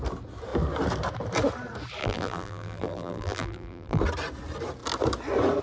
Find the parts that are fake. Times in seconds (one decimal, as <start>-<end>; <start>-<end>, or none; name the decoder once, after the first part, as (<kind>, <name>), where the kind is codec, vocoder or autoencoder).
2.0-4.0 (vocoder, BigVGAN v2)